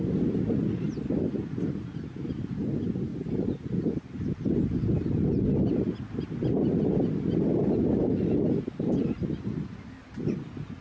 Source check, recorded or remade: recorded